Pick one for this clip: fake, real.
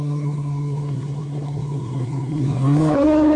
fake